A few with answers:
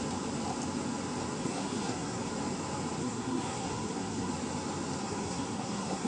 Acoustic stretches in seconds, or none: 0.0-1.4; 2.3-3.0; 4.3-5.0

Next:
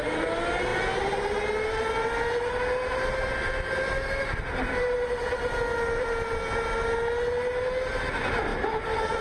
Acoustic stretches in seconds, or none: 0.0-9.2